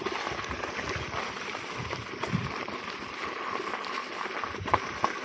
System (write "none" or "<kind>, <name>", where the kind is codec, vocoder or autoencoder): none